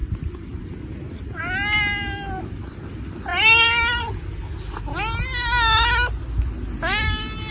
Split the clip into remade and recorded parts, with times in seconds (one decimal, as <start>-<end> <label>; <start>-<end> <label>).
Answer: 0.0-1.4 remade; 1.4-3.3 recorded; 3.3-4.0 remade; 4.0-7.5 recorded

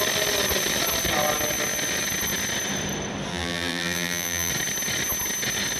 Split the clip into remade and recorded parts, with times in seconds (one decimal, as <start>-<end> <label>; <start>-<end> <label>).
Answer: 0.0-3.3 recorded; 3.3-4.5 remade; 4.5-5.8 recorded